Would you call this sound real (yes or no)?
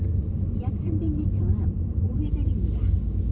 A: yes